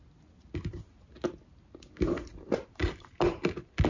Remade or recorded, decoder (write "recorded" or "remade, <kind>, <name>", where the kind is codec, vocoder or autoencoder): recorded